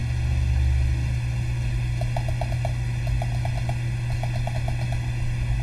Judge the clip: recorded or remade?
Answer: recorded